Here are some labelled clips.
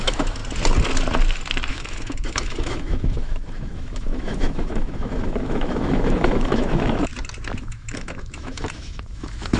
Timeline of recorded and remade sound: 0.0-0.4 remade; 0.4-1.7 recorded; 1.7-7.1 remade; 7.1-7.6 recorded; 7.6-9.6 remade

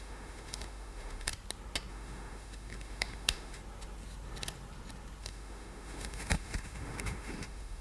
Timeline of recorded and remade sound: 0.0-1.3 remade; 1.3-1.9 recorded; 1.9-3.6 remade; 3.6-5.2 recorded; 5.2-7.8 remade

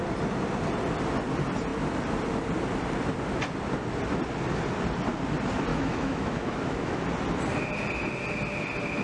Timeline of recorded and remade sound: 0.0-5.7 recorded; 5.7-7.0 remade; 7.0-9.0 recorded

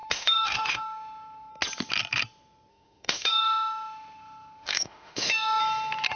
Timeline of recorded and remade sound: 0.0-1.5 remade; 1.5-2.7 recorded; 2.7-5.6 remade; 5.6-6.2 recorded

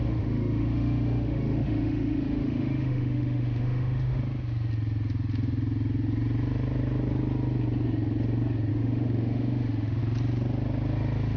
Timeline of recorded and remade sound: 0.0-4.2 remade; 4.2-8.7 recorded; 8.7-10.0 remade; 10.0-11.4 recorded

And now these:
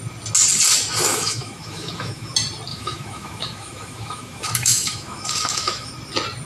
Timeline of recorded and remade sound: 0.0-1.1 recorded; 1.1-2.3 remade; 2.3-2.7 recorded; 2.7-5.9 remade; 5.9-6.4 recorded

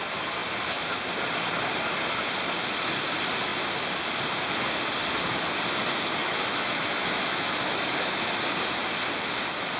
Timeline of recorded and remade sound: 0.0-6.2 recorded; 6.2-8.3 remade; 8.3-9.8 recorded

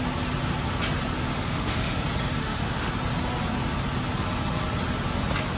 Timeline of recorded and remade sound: 0.0-1.3 recorded; 1.3-2.0 remade; 2.0-2.4 recorded; 2.4-2.9 remade; 2.9-5.6 recorded